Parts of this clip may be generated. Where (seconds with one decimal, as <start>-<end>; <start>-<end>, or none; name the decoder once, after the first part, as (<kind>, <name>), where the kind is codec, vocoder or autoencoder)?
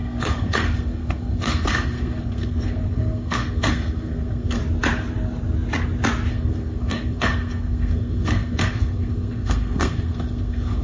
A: 0.0-4.6 (codec, SNAC); 6.3-10.8